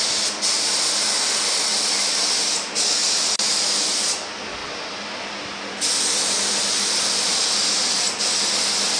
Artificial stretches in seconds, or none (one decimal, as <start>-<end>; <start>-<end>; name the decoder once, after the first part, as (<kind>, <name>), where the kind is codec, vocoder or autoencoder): none